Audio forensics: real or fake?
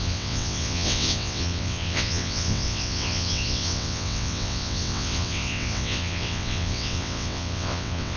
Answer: fake